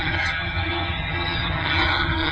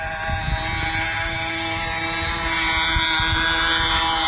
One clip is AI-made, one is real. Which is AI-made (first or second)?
first